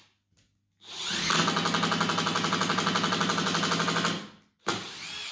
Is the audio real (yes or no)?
yes